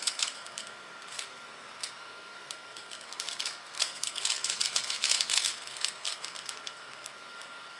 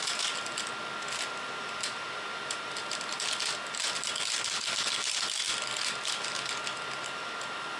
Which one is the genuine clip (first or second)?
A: second